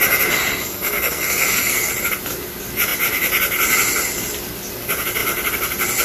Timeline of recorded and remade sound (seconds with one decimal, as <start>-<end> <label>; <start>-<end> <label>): 0.0-0.6 recorded; 0.6-1.9 remade; 1.9-6.0 recorded

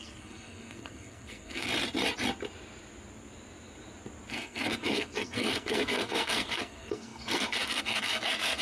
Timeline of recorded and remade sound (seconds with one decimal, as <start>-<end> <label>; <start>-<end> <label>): 0.0-1.7 remade; 1.7-4.3 recorded; 4.3-8.6 remade

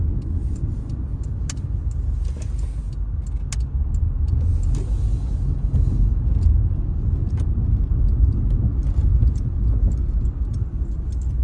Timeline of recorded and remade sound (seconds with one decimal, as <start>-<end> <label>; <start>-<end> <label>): 0.0-11.4 recorded

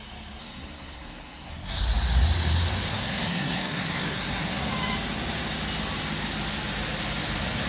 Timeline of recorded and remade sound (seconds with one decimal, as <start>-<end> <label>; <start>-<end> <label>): 0.0-0.4 recorded; 0.4-1.8 remade; 1.8-2.9 recorded; 2.9-4.7 remade; 4.7-7.7 recorded

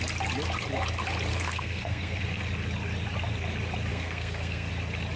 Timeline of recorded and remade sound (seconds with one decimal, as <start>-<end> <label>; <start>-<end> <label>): 0.0-1.3 recorded; 1.3-2.4 remade; 2.4-3.9 recorded; 3.9-4.7 remade; 4.7-5.2 recorded

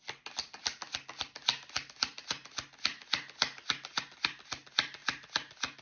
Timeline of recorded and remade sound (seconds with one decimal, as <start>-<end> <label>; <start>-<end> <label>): 0.0-5.8 recorded